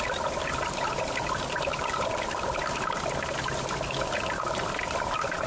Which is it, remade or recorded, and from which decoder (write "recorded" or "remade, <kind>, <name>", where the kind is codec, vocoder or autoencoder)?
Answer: remade, vocoder, BigVGAN v2